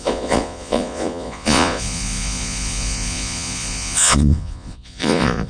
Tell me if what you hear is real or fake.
fake